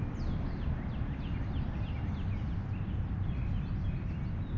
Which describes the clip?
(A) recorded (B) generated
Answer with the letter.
A